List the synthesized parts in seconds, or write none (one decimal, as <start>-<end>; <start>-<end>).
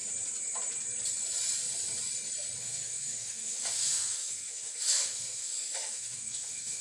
2.6-6.8